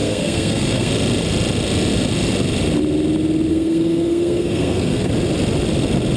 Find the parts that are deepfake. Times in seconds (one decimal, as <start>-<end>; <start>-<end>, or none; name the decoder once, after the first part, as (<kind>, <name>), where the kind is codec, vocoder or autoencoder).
0.0-0.9 (codec, SNAC); 3.5-5.1